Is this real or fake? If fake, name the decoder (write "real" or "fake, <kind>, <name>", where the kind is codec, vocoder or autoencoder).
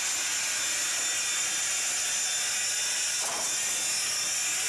real